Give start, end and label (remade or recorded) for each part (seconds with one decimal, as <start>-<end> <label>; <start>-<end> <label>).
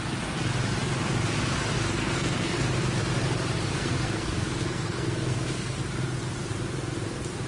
0.0-2.0 recorded; 2.0-2.6 remade; 2.6-3.7 recorded; 3.7-5.8 remade; 5.8-7.5 recorded